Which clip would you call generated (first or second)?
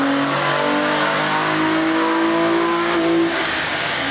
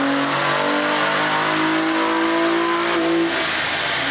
first